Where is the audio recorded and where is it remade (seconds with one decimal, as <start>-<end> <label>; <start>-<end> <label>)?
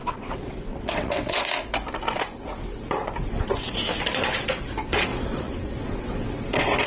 0.0-1.4 remade; 1.4-2.5 recorded; 2.5-3.4 remade; 3.4-5.1 recorded; 5.1-6.9 remade